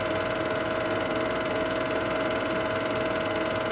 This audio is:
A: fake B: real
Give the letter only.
B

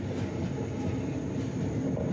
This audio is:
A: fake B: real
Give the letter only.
B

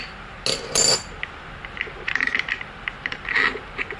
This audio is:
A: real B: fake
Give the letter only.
A